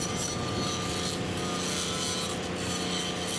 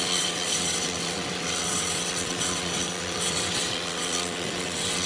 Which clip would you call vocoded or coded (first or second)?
second